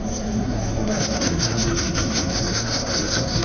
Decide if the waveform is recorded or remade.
remade